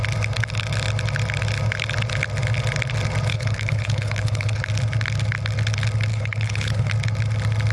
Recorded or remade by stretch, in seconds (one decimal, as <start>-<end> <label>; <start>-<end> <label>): 0.0-3.3 recorded; 3.3-4.7 remade; 4.7-6.1 recorded; 6.1-6.9 remade; 6.9-7.7 recorded